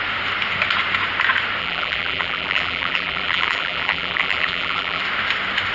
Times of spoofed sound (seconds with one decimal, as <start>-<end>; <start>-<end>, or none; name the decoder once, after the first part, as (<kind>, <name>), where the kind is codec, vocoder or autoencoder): 1.6-5.0 (vocoder, BigVGAN v2)